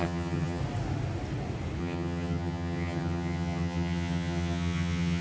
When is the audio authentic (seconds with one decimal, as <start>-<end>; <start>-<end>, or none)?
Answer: 0.6-1.8